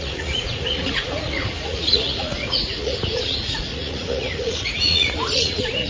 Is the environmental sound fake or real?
fake